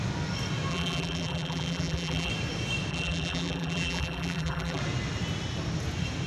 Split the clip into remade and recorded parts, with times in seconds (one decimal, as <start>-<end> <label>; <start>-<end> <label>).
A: 0.0-0.7 recorded; 0.7-2.3 remade; 2.3-2.9 recorded; 2.9-4.8 remade; 4.8-6.3 recorded